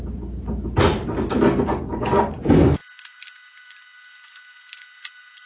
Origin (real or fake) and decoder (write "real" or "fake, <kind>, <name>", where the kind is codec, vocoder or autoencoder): real